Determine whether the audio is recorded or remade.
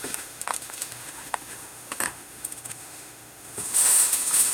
remade